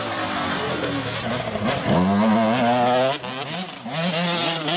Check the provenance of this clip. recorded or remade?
recorded